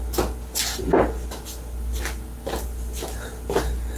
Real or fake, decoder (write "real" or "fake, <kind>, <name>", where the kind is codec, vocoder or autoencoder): real